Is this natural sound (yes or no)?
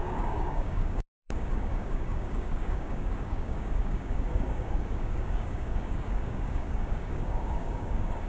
no